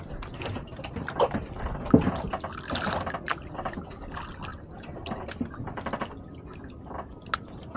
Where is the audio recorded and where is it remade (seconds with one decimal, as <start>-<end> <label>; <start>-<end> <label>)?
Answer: 0.0-7.8 recorded